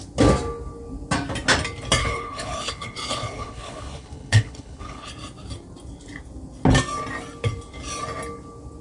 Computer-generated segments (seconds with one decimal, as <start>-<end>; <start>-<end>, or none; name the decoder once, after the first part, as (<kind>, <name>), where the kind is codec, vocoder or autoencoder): 2.0-5.1 (codec, HILCodec)